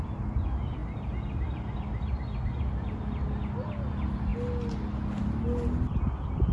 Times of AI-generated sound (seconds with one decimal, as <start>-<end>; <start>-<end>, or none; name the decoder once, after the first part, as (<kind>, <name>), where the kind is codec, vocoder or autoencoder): none